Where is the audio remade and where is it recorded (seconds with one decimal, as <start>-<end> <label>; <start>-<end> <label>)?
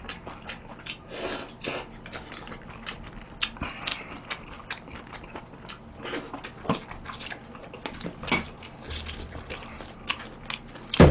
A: 0.0-11.1 recorded